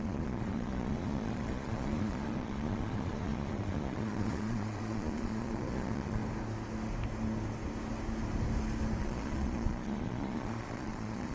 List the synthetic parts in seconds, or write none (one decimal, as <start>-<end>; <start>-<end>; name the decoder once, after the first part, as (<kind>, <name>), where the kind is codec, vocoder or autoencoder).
0.0-6.2 (vocoder, Vocos); 9.0-11.3